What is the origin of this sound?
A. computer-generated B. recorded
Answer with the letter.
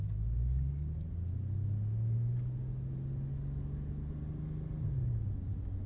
B